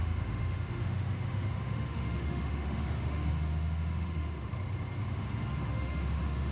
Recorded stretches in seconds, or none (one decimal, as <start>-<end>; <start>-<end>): 4.5-5.1